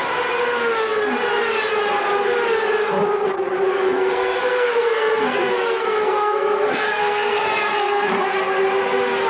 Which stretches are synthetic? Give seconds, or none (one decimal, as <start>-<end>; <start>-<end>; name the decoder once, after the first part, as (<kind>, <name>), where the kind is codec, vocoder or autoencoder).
3.7-8.1 (codec, SNAC)